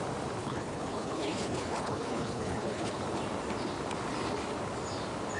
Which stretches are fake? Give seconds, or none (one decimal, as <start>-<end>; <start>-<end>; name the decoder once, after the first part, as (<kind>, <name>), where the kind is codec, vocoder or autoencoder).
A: 0.4-3.0 (codec, HILCodec)